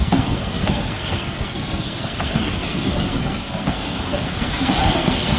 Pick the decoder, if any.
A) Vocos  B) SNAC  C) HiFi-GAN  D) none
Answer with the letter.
B